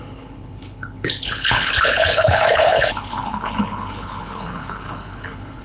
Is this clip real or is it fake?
fake